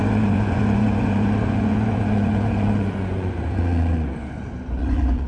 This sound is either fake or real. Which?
fake